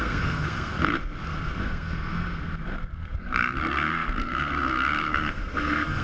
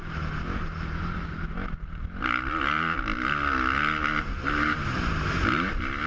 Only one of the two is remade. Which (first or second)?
first